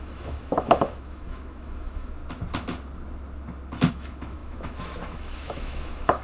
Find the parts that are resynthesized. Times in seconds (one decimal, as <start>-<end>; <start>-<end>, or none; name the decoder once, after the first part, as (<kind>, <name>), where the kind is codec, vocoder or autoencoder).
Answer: 0.0-2.2 (autoencoder, DAC-VAE); 3.9-6.2